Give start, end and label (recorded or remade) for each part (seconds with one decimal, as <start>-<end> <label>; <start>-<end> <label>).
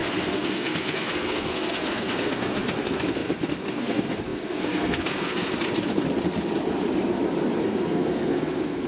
0.0-5.5 remade; 5.5-7.6 recorded; 7.6-8.9 remade